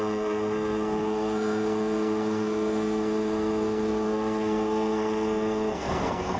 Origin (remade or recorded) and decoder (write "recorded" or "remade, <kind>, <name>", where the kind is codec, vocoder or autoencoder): remade, codec, SNAC